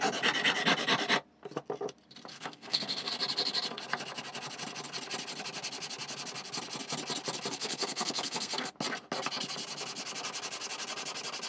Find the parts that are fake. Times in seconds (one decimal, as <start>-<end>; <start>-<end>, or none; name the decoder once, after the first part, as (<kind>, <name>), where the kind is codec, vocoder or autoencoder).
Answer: 2.3-3.1 (codec, SNAC); 7.5-8.7